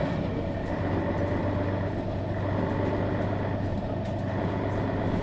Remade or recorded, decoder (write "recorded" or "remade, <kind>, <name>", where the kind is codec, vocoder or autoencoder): recorded